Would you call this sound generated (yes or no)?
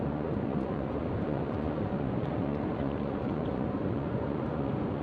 yes